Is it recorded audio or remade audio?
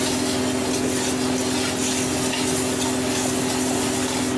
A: recorded